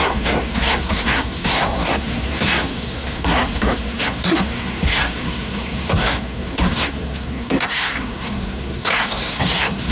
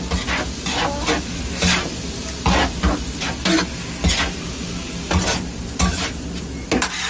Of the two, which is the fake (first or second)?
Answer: first